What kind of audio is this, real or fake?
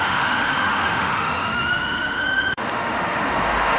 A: fake